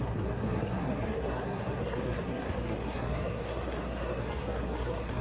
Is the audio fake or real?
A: fake